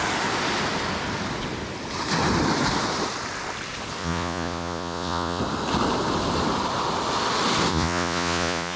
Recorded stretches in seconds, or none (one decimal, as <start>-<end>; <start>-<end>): 0.0-4.0; 5.4-7.7